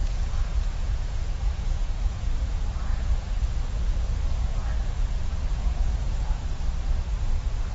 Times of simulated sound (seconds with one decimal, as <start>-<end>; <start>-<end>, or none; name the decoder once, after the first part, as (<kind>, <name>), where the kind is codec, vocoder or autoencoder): 0.0-2.3 (vocoder, Vocos); 2.9-6.4